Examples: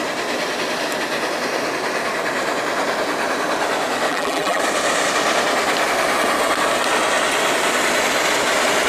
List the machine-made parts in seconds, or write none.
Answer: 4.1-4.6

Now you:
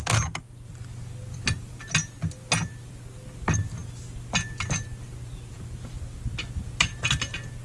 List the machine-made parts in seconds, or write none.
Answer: none

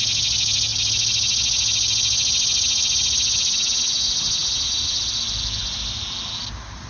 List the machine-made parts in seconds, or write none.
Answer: none

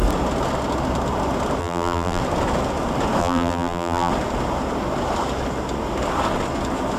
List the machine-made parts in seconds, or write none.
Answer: 1.6-2.2; 3.2-4.1

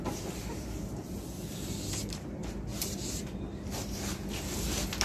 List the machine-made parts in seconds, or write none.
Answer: 0.0-2.4; 4.4-5.0

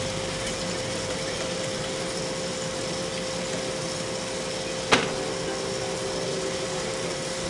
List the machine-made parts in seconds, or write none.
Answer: 0.0-3.1; 6.3-7.5